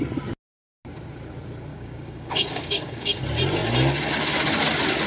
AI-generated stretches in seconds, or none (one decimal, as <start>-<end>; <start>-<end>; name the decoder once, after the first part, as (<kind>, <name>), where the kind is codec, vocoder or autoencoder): 1.7-3.2 (codec, DAC)

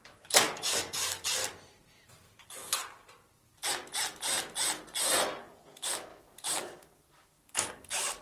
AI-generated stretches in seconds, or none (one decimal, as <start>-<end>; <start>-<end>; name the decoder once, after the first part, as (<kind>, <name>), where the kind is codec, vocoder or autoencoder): 0.0-1.4 (codec, DAC); 2.4-2.8; 5.4-8.2

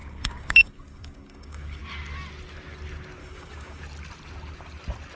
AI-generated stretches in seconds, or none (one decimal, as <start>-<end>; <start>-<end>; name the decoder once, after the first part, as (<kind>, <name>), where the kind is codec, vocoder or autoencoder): 0.0-1.8 (codec, DAC); 3.2-3.8

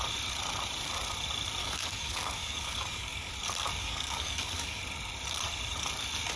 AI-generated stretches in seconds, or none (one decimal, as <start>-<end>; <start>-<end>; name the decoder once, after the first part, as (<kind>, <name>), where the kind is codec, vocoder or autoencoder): 1.6-3.3 (codec, DAC); 3.8-4.8

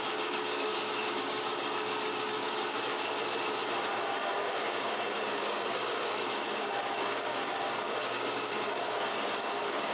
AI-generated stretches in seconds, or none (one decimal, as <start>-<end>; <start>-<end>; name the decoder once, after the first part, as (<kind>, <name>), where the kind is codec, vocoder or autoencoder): 0.0-3.2 (codec, DAC); 3.9-9.9